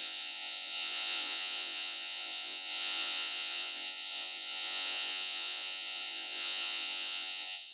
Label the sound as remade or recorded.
remade